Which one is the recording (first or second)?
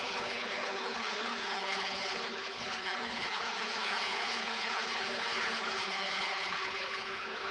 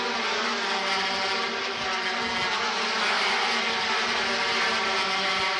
second